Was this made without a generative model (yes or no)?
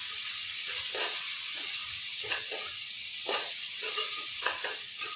no